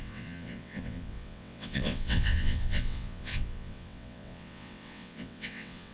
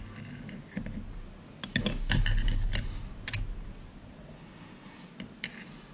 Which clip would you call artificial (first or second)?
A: first